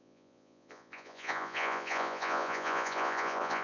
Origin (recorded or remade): remade